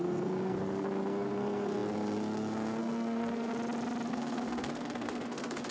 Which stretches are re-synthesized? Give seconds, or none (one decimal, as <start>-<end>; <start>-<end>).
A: 0.0-3.5; 4.1-5.7